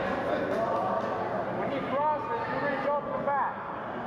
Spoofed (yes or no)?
no